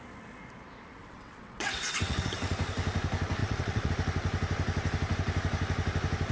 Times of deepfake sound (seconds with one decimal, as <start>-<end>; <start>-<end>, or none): 1.0-2.5; 3.4-3.9